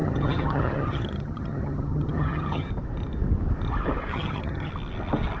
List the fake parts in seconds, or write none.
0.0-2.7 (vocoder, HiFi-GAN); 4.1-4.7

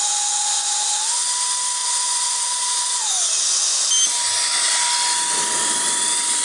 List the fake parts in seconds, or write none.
0.0-1.2 (vocoder, Vocos); 1.8-3.9